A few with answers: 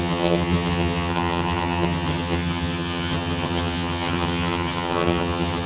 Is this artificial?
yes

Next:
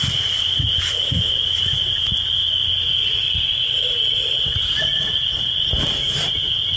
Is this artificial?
no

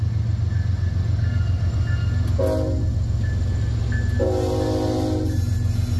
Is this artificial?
no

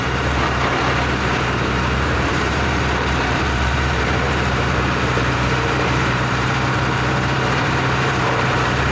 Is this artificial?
yes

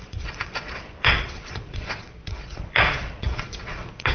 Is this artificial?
yes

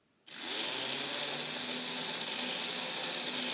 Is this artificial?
no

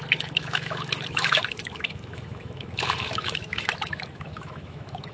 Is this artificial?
yes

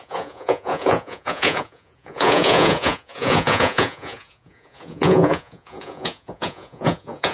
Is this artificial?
yes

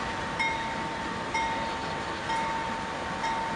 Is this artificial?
no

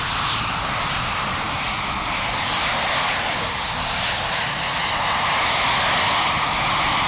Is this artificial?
no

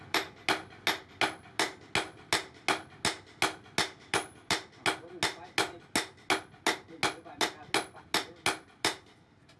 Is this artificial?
no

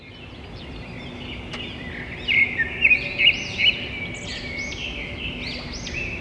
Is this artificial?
no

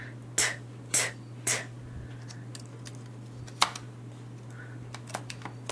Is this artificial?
no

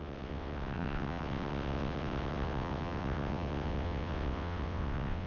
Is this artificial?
yes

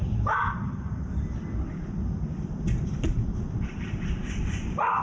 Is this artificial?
yes